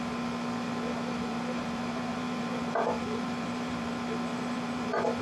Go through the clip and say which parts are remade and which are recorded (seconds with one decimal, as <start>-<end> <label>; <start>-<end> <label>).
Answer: 0.0-1.3 recorded; 1.3-3.9 remade; 3.9-4.3 recorded; 4.3-5.2 remade